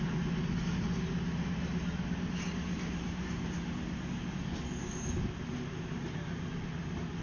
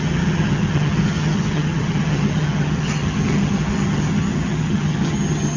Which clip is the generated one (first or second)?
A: second